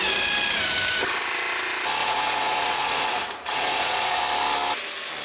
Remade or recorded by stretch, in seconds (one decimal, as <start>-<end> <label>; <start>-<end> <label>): 0.0-2.0 recorded; 2.0-4.2 remade; 4.2-5.2 recorded